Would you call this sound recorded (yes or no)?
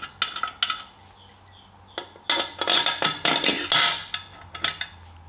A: yes